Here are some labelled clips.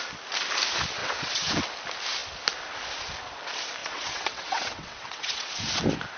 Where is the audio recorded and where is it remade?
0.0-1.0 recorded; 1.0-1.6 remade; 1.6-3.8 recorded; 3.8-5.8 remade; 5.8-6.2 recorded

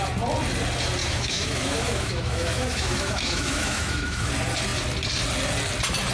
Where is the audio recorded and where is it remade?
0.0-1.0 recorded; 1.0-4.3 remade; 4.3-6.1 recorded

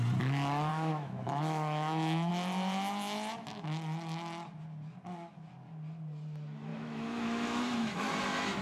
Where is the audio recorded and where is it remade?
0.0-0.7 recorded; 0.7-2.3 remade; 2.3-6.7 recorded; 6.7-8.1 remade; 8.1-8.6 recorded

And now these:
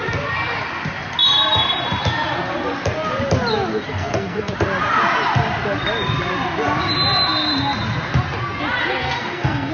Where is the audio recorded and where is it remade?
0.0-3.7 recorded; 3.7-4.5 remade; 4.5-8.8 recorded; 8.8-9.7 remade